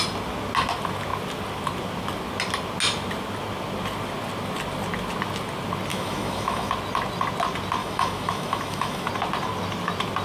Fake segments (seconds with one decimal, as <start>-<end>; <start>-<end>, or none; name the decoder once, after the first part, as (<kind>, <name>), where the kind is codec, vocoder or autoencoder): 5.9-6.7 (autoencoder, DAC-VAE); 7.8-9.1